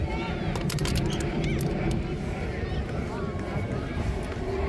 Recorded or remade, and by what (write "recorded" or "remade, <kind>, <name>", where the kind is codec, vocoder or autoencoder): recorded